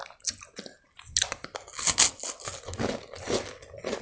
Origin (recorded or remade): recorded